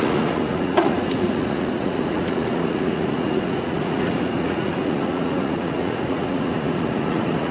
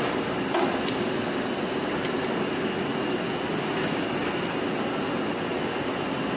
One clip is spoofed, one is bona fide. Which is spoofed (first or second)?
first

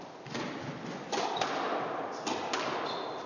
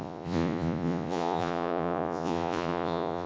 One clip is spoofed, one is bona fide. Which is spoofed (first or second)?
second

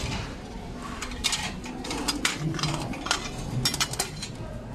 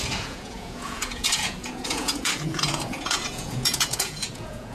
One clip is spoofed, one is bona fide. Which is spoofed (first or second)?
second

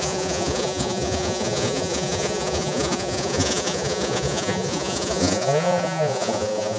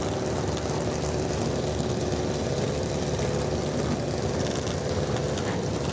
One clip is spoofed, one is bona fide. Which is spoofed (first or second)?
first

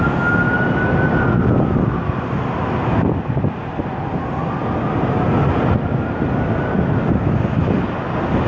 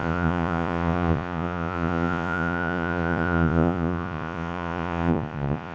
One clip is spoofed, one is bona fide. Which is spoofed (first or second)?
second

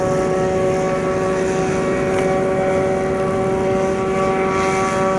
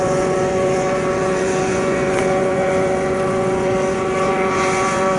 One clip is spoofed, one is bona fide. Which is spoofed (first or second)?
second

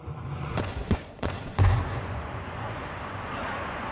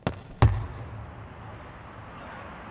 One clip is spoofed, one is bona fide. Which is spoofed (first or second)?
first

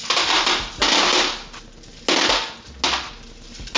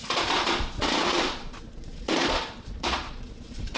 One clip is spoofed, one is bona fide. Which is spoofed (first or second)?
second